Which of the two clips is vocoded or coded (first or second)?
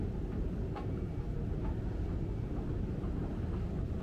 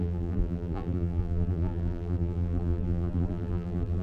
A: second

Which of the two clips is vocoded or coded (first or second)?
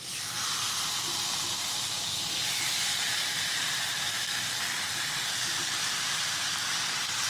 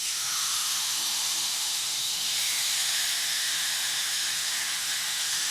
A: second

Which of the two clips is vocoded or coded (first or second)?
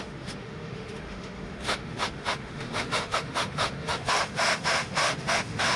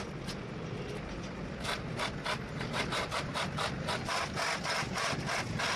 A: first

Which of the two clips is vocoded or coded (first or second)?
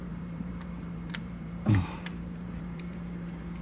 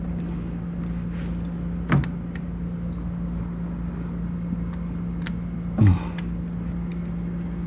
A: first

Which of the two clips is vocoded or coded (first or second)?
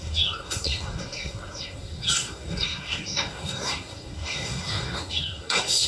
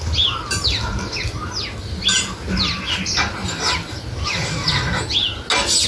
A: first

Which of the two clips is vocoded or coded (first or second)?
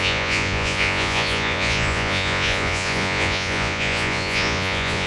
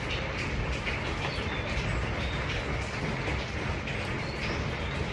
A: first